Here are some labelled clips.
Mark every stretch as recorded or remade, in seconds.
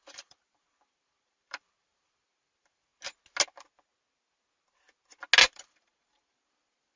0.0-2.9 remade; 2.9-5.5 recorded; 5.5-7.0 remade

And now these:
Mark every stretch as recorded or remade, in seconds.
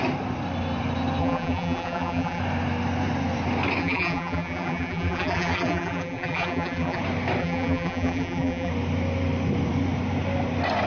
0.0-1.2 recorded; 1.2-2.4 remade; 2.4-3.8 recorded; 3.8-7.0 remade; 7.0-7.4 recorded; 7.4-8.7 remade; 8.7-10.9 recorded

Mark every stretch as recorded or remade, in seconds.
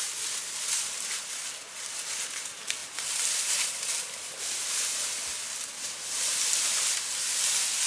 0.0-1.6 recorded; 1.6-2.1 remade; 2.1-2.8 recorded; 2.8-4.7 remade; 4.7-7.9 recorded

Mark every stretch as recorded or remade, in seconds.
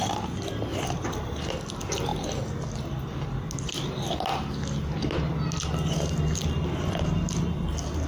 0.0-0.7 recorded; 0.7-1.5 remade; 1.5-8.1 recorded